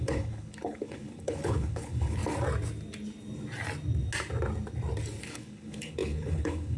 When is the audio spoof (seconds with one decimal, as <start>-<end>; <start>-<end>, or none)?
0.0-2.2; 5.2-6.8